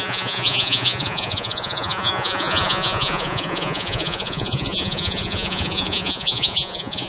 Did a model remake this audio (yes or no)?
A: yes